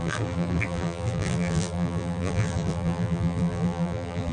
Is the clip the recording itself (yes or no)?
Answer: no